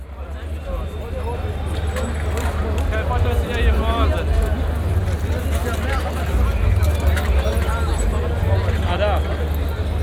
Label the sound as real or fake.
real